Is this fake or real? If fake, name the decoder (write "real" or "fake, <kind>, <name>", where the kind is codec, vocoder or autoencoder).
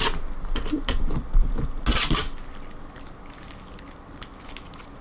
real